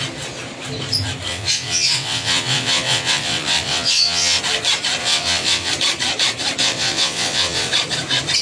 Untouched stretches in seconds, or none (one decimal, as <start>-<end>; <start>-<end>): 0.0-1.3; 4.4-5.0; 5.7-6.6; 7.7-8.4